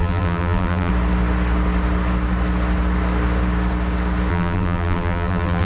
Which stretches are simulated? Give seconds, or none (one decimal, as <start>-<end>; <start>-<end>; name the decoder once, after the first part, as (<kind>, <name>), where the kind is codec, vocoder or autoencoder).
0.0-0.9 (vocoder, BigVGAN v2); 4.3-5.6